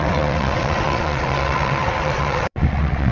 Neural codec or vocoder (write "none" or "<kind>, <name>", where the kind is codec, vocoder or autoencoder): vocoder, WaveNeXt